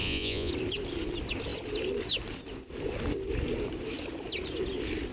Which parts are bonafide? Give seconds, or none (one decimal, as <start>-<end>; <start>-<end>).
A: 0.5-5.1